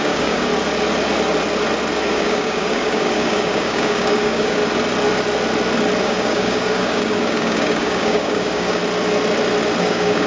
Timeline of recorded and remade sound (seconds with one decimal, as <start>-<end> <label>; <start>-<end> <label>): 0.0-0.5 remade; 0.5-2.1 recorded; 2.1-4.6 remade; 4.6-6.0 recorded; 6.0-8.8 remade; 8.8-9.8 recorded; 9.8-10.3 remade

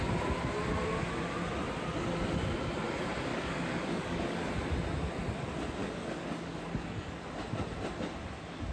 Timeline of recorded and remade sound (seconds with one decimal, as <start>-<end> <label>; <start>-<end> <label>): 0.0-3.3 recorded; 3.3-4.5 remade; 4.5-5.8 recorded; 5.8-7.2 remade; 7.2-8.7 recorded